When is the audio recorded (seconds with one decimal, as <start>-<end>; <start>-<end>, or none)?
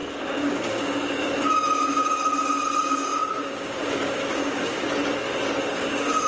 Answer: 2.0-2.8; 4.8-5.6